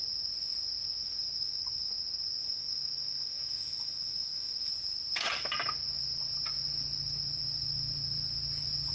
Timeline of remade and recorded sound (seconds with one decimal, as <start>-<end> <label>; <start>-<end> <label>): 0.0-1.0 recorded; 1.0-1.9 remade; 1.9-2.4 recorded; 2.4-4.7 remade; 4.7-8.9 recorded

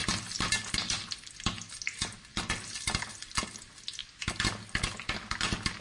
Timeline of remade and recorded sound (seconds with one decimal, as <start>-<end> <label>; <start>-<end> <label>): 0.0-2.3 recorded; 2.3-3.0 remade; 3.0-5.8 recorded

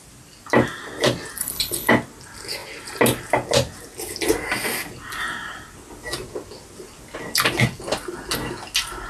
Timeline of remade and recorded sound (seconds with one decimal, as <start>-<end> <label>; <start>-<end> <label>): 0.0-1.4 recorded; 1.4-1.9 remade; 1.9-9.1 recorded

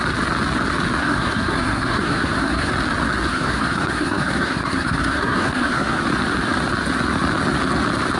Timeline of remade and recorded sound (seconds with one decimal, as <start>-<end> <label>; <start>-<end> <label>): 0.0-1.0 recorded; 1.0-2.7 remade; 2.7-3.3 recorded; 3.3-6.0 remade; 6.0-8.2 recorded

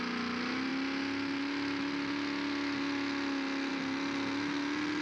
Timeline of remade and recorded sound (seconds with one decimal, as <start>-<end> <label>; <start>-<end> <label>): 0.0-5.0 recorded